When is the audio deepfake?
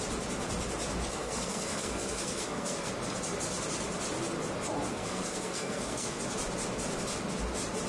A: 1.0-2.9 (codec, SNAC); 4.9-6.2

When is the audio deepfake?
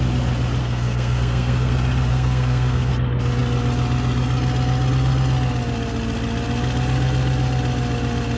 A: 0.6-1.7 (codec, SNAC); 2.1-2.9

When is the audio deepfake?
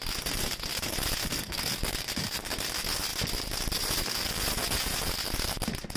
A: 1.3-1.8 (codec, SNAC)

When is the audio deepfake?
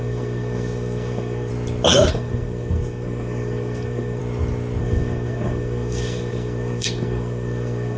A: 0.0-1.5 (codec, SNAC); 2.1-4.2; 4.8-8.0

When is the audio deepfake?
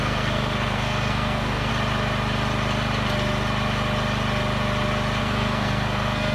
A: 0.0-1.7 (codec, SNAC); 5.2-6.3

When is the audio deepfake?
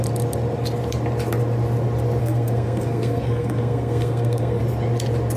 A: 2.2-4.6 (codec, SNAC)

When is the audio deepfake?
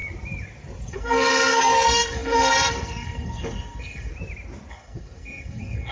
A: 0.9-4.1 (codec, SNAC); 4.7-5.9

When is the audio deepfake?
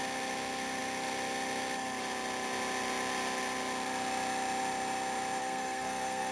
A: 5.4-6.3 (codec, SNAC)